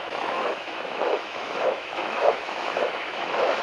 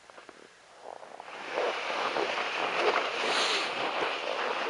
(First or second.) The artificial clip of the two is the first